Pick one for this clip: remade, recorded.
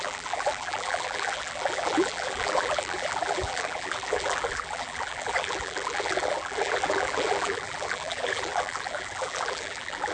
remade